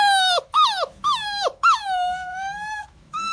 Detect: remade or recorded remade